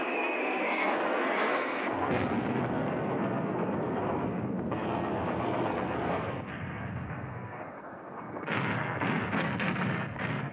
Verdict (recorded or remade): remade